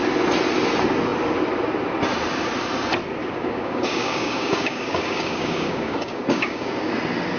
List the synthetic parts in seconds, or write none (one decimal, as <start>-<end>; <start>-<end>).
3.2-6.9